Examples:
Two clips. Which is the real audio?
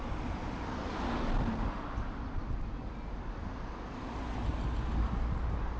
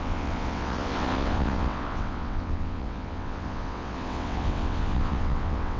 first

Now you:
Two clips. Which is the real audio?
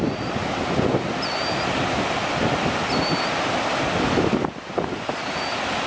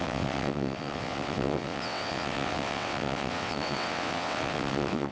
first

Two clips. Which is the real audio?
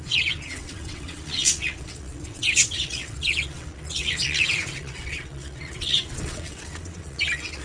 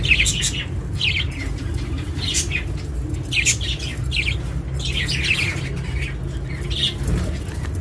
second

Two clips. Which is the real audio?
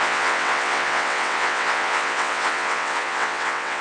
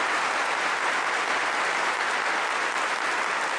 second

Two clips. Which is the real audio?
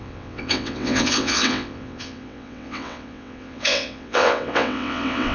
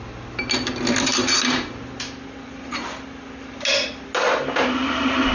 second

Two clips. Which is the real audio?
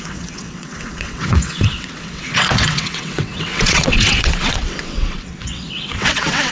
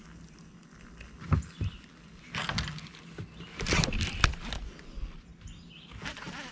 second